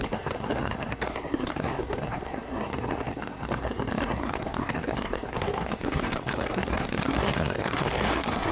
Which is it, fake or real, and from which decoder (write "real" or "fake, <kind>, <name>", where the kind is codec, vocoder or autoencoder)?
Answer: fake, codec, SNAC